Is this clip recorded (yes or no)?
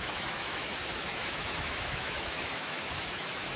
no